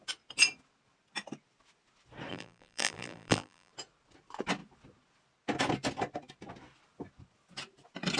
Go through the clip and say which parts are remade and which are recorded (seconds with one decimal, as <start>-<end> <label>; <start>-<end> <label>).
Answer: 0.0-2.3 recorded; 2.3-3.7 remade; 3.7-8.2 recorded